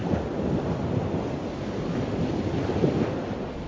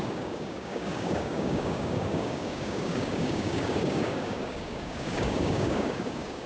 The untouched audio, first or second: first